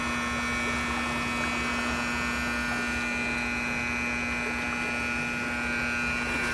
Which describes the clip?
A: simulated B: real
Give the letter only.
B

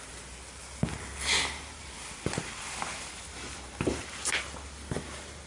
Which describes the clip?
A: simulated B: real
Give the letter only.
B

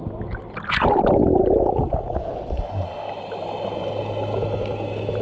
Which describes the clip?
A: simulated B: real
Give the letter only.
B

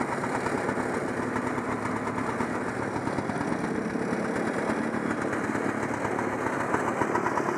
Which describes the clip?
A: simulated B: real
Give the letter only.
B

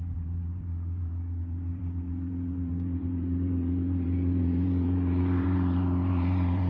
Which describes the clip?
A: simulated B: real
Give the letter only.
A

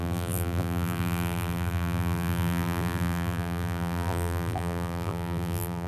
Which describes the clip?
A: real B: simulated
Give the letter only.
B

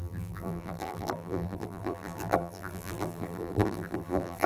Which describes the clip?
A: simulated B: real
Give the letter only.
A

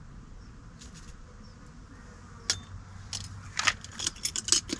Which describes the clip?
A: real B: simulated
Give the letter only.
A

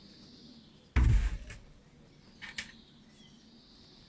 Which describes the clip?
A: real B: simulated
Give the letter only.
A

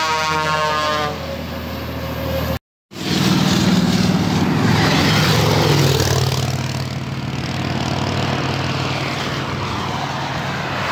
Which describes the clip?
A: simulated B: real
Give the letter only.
B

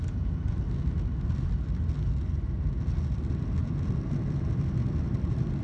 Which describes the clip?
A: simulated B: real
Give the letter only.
B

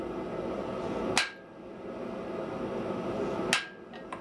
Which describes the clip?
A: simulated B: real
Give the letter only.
B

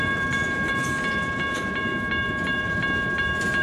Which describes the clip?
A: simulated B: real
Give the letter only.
A